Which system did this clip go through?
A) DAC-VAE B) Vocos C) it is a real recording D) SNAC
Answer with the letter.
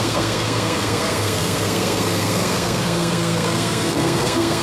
D